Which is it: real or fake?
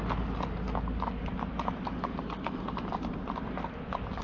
real